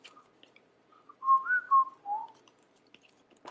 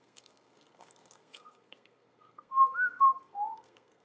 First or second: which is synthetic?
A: second